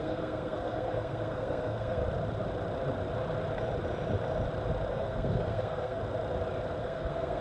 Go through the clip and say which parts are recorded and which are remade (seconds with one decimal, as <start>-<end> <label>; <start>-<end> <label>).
0.0-2.0 remade; 2.0-4.9 recorded; 4.9-6.0 remade; 6.0-6.8 recorded; 6.8-7.4 remade